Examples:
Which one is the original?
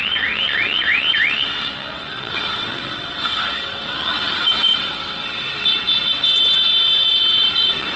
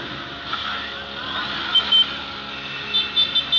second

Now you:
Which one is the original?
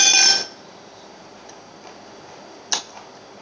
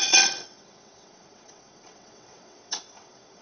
first